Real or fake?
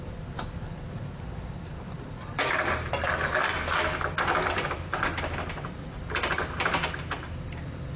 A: fake